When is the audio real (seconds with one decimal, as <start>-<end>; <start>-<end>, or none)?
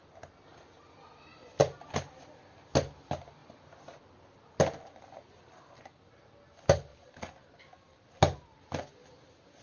0.0-9.6